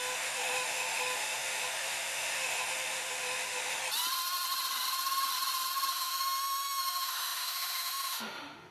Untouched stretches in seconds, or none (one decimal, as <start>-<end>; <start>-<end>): 3.8-5.9